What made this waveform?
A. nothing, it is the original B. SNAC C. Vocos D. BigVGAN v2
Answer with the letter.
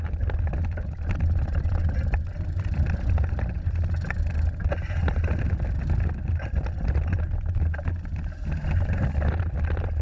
A